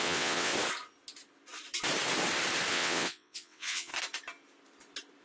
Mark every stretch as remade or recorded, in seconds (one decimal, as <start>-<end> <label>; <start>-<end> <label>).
0.0-0.5 remade; 0.5-2.7 recorded; 2.7-3.9 remade; 3.9-5.2 recorded